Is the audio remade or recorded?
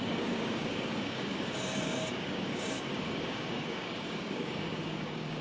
remade